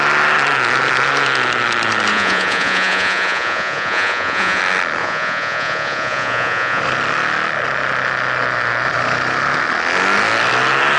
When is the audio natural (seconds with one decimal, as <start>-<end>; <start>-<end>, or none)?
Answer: 0.0-2.1; 4.6-5.0; 6.8-11.0